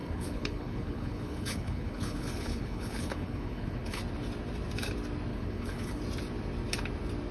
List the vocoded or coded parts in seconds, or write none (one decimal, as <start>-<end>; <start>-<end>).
0.0-4.0; 5.3-6.0